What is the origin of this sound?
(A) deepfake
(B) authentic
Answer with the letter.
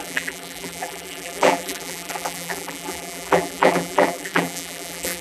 A